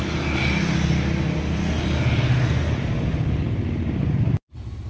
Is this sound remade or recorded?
recorded